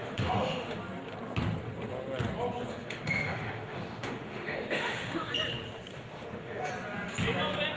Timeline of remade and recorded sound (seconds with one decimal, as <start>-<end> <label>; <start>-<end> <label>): 0.0-0.8 remade; 0.8-2.7 recorded; 2.7-5.3 remade; 5.3-5.9 recorded; 5.9-6.7 remade; 6.7-7.8 recorded